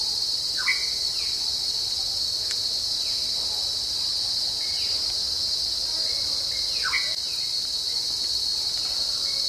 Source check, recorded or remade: recorded